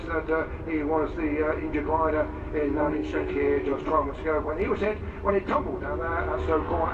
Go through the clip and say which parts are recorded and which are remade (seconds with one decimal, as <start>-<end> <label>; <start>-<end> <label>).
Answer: 0.0-2.8 recorded; 2.8-3.3 remade; 3.3-6.9 recorded